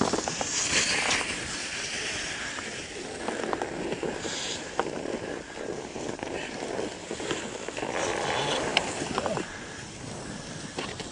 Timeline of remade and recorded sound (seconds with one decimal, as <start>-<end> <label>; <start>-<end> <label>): 0.0-8.7 recorded; 8.7-9.2 remade; 9.2-11.1 recorded